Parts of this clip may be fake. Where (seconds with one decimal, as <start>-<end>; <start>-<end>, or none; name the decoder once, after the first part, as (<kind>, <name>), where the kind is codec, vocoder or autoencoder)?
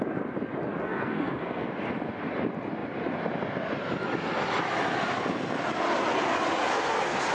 0.8-1.7 (codec, SNAC); 6.7-7.3